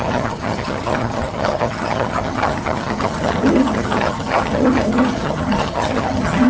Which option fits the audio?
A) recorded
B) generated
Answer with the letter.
B